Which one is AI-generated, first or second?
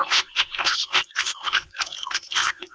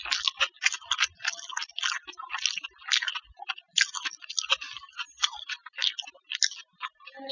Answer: first